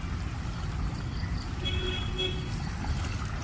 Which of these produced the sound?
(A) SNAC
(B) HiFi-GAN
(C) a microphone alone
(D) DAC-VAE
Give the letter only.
C